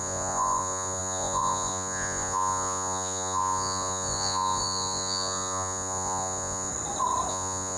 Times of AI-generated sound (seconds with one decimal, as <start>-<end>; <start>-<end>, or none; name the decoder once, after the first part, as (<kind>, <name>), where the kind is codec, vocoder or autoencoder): 0.0-6.7 (vocoder, Vocos); 7.3-7.8